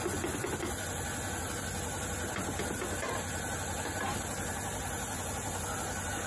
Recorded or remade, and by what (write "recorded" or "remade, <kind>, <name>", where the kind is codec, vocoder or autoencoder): recorded